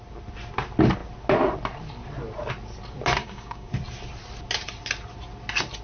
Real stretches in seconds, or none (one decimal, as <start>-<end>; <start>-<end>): 0.0-3.2; 3.7-5.8